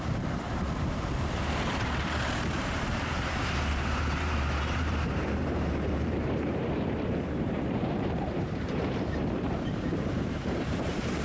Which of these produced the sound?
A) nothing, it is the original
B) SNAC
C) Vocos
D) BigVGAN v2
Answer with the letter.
D